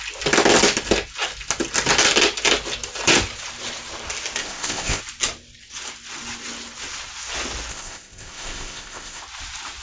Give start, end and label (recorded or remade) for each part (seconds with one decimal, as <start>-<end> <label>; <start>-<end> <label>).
0.0-4.4 recorded; 4.4-5.0 remade; 5.0-7.7 recorded; 7.7-9.2 remade; 9.2-9.8 recorded